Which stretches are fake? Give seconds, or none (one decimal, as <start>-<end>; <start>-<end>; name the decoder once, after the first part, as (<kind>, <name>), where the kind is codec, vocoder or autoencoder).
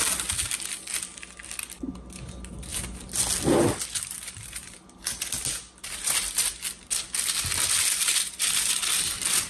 none